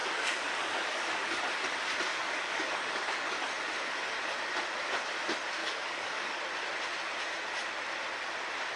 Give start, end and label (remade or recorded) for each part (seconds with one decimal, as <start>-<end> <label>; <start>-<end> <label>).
0.0-1.4 remade; 1.4-2.1 recorded; 2.1-3.4 remade; 3.4-5.6 recorded; 5.6-6.4 remade; 6.4-8.8 recorded

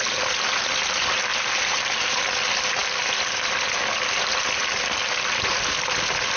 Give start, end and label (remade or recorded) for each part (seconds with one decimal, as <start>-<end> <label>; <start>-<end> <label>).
0.0-1.3 recorded; 1.3-2.2 remade; 2.2-6.4 recorded

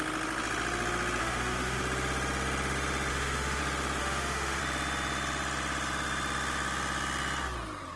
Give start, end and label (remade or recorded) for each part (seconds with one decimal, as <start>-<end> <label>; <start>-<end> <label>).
0.0-1.2 recorded; 1.2-1.8 remade; 1.8-3.1 recorded; 3.1-3.6 remade; 3.6-4.0 recorded; 4.0-4.6 remade; 4.6-8.0 recorded

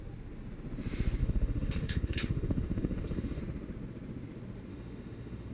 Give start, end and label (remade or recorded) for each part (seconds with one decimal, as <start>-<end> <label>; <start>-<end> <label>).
0.0-1.2 recorded; 1.2-3.4 remade; 3.4-4.7 recorded; 4.7-5.5 remade

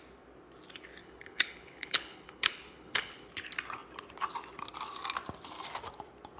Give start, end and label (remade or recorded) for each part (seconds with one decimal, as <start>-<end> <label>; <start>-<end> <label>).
0.0-1.0 recorded; 1.0-3.3 remade; 3.3-6.4 recorded

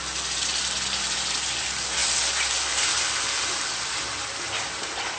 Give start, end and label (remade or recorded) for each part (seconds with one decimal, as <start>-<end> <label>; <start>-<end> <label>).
0.0-5.2 recorded

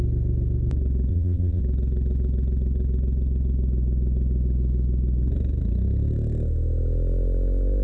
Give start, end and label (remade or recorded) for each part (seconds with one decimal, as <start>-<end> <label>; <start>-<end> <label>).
0.0-1.1 recorded; 1.1-1.6 remade; 1.6-7.8 recorded

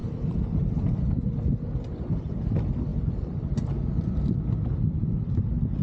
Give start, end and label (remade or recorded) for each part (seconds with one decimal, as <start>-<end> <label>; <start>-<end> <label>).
0.0-5.8 recorded